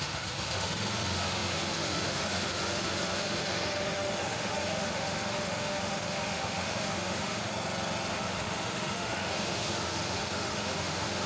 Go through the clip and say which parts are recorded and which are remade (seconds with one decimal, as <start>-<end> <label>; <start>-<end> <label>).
0.0-7.5 remade; 7.5-8.1 recorded; 8.1-11.3 remade